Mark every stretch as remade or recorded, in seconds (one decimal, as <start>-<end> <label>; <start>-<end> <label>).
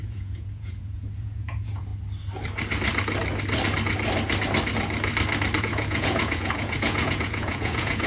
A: 0.0-1.9 remade; 1.9-5.6 recorded; 5.6-8.1 remade